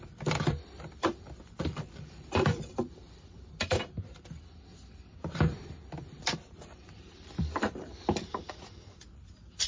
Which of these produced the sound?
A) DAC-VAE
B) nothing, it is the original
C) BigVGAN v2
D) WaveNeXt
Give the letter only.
C